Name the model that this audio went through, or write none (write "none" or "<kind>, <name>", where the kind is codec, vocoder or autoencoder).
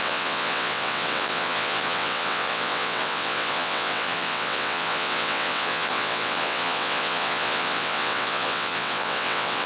vocoder, WaveNeXt